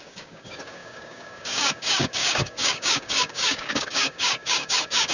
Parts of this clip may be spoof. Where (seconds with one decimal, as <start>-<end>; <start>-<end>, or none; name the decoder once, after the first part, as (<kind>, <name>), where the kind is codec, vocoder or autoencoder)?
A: 0.0-5.1 (codec, DAC)